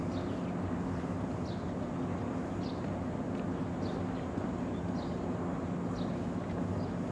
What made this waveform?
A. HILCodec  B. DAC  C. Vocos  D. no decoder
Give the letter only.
D